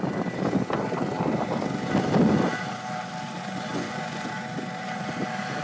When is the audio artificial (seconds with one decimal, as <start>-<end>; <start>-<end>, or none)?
3.7-4.3